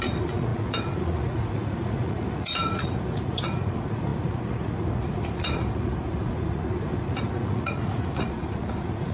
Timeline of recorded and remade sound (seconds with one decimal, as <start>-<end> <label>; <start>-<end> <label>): 0.0-9.1 remade